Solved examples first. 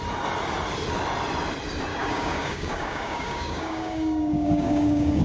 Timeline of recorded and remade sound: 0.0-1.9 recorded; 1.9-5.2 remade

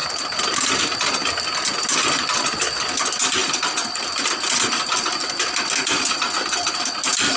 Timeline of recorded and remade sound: 0.0-7.4 recorded